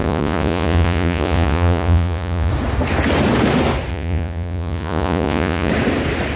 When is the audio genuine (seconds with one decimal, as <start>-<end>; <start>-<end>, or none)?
2.5-3.9; 5.7-6.4